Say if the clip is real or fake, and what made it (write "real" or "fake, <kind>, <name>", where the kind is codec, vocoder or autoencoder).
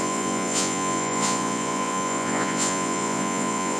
fake, vocoder, Vocos